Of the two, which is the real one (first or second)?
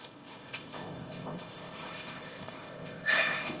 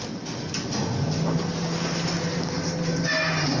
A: second